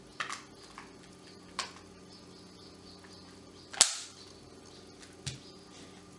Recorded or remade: recorded